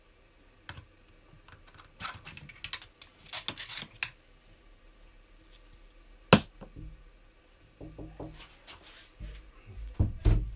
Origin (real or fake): real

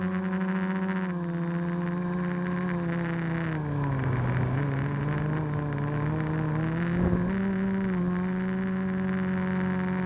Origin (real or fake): real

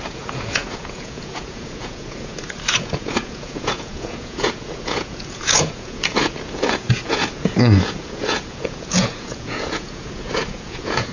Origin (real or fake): fake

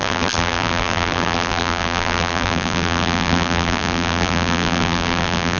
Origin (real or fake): fake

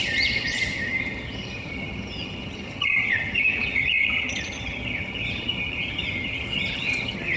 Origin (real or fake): fake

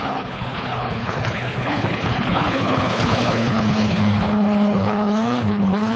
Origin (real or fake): fake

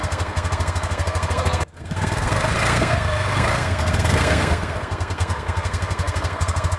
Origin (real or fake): fake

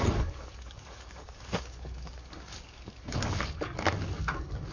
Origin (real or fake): fake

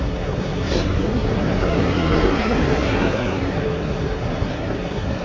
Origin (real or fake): fake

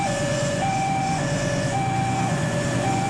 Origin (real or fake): fake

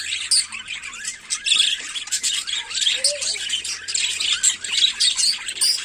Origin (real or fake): real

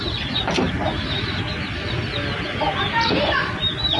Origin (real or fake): real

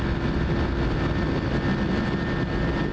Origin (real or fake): real